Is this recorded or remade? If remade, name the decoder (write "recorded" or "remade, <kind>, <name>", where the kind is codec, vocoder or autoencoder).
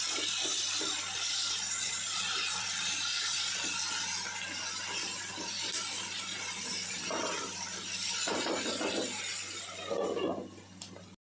remade, vocoder, BigVGAN v2